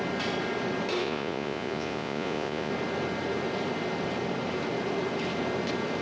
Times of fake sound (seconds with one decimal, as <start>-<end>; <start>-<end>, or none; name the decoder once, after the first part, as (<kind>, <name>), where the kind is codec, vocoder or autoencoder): 1.0-2.7 (vocoder, Vocos)